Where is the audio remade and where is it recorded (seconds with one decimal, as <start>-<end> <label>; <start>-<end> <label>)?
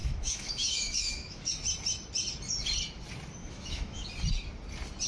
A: 0.0-1.5 remade; 1.5-3.4 recorded; 3.4-4.1 remade; 4.1-5.1 recorded